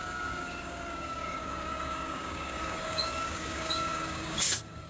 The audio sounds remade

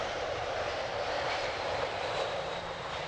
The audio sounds remade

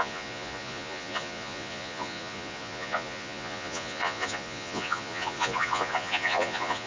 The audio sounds remade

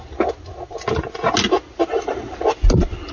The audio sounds recorded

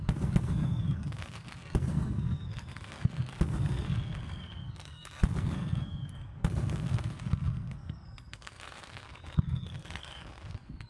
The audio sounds remade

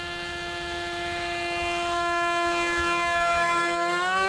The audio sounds remade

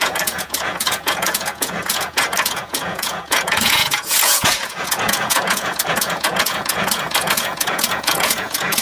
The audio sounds remade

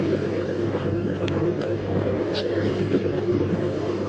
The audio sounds remade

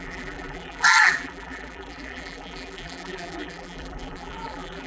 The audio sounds remade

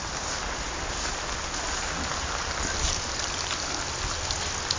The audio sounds recorded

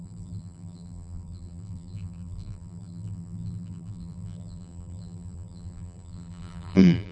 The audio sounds remade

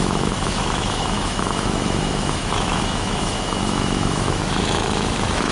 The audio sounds remade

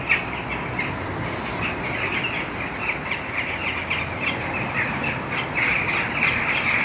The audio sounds recorded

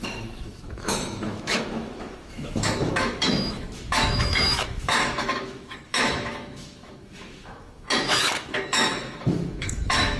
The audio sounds remade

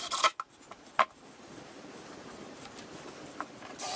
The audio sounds recorded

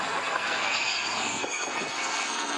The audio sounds remade